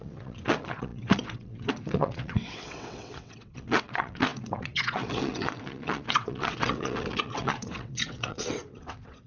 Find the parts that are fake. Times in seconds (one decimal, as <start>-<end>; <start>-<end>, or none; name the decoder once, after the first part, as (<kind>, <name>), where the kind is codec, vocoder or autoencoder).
0.0-9.3 (vocoder, WaveNeXt)

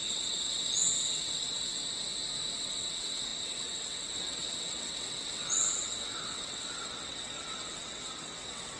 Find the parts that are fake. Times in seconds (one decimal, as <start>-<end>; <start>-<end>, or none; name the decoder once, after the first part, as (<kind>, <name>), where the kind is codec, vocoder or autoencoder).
0.0-1.8 (vocoder, WaveNeXt); 2.6-8.8

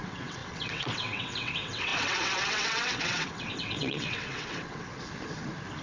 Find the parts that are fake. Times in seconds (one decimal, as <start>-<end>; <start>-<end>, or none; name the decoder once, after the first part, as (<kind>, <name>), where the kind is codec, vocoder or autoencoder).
0.0-4.9 (vocoder, WaveNeXt)